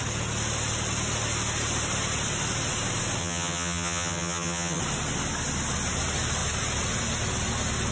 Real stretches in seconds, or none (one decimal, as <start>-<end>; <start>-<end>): 0.0-3.2; 4.8-7.9